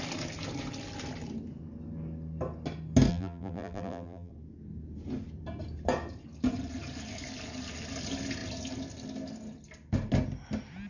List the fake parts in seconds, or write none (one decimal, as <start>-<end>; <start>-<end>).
3.1-4.3